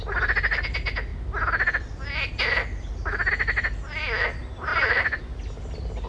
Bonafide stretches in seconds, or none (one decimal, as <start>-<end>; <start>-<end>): 0.0-6.1